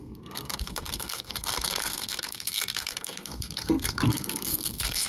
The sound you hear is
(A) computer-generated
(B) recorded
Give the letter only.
A